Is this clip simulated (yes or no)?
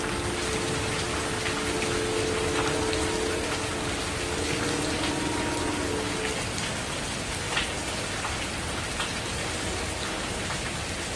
no